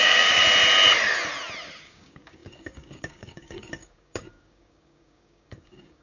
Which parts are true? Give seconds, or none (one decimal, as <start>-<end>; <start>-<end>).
0.4-1.8